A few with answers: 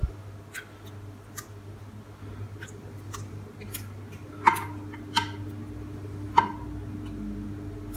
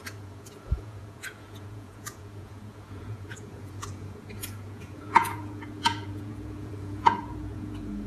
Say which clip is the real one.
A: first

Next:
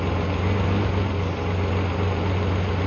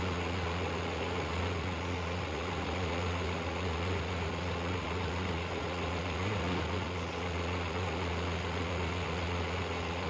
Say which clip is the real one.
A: first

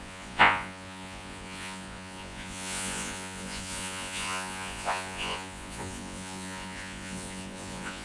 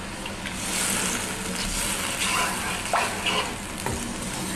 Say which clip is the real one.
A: second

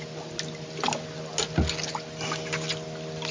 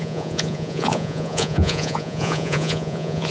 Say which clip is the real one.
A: first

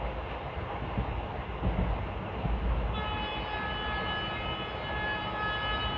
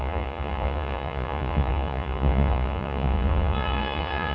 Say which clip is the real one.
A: first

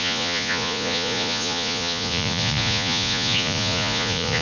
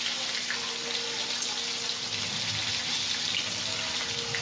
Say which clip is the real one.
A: second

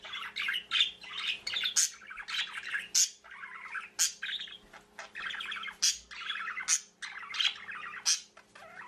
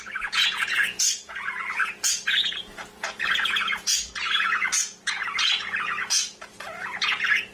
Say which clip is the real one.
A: first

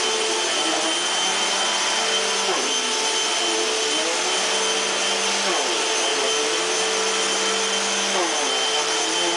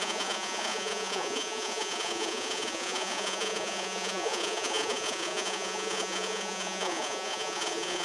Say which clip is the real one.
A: first